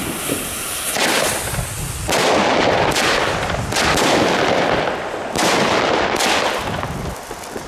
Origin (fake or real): real